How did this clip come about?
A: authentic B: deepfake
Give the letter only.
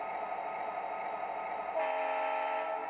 A